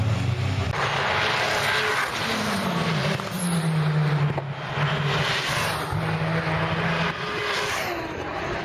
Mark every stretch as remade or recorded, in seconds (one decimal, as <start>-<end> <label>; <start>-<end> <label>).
0.0-8.6 recorded